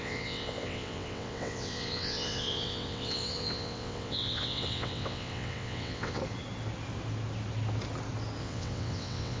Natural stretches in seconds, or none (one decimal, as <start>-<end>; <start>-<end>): 6.2-8.4